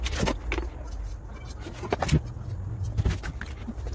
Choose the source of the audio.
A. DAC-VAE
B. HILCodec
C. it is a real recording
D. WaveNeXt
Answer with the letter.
C